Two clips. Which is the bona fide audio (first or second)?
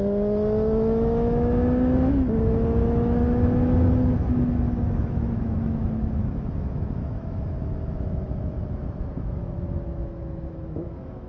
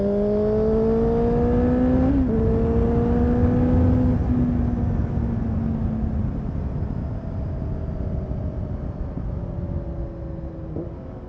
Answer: second